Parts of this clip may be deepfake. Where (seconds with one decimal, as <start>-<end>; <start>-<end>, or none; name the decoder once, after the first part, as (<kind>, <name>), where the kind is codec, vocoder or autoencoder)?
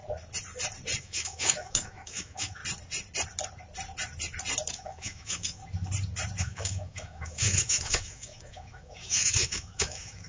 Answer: 1.0-2.6 (autoencoder, DAC-VAE); 4.7-5.6; 6.4-10.3